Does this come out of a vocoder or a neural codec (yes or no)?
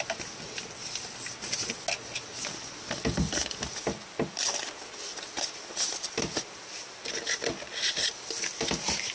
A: no